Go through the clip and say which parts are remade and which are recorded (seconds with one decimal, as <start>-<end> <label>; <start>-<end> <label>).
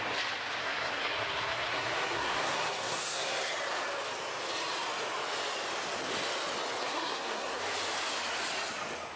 0.0-0.6 recorded; 0.6-3.5 remade; 3.5-6.8 recorded; 6.8-7.6 remade; 7.6-9.2 recorded